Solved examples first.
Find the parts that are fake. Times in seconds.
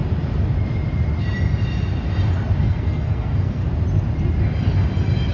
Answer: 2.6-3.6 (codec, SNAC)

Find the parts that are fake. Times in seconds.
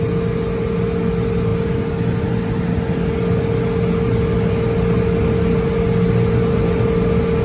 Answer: none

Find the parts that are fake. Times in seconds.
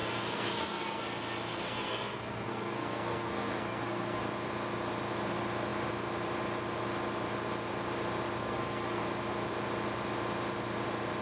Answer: 0.0-1.0 (codec, SNAC); 1.5-4.2; 8.4-9.0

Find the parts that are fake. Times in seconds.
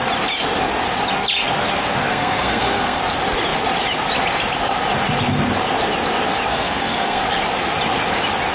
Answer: 2.1-3.0 (codec, SNAC); 6.5-7.2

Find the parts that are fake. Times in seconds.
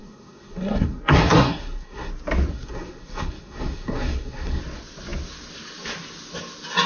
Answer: 0.0-2.1 (codec, SNAC); 2.5-4.6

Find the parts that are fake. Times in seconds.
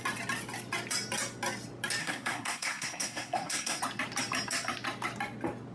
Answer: 2.0-3.8 (codec, SNAC)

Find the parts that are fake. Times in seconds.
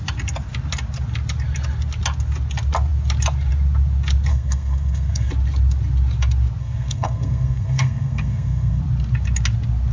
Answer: 4.3-5.3 (codec, SNAC); 6.6-8.8